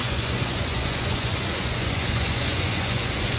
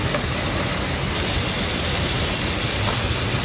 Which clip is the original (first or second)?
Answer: second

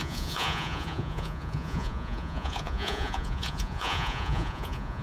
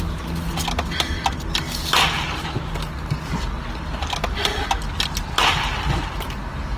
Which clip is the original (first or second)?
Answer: second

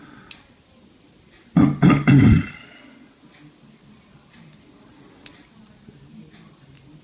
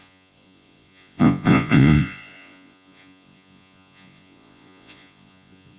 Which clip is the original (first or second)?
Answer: first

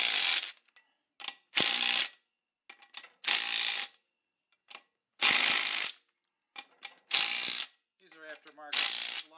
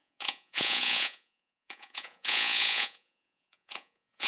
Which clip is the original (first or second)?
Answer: first